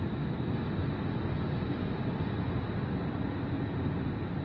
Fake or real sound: real